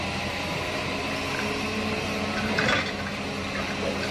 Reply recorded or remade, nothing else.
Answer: recorded